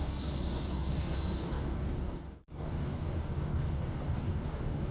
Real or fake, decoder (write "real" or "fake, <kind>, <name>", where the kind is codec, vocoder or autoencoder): fake, codec, DAC